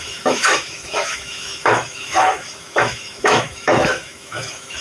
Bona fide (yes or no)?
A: no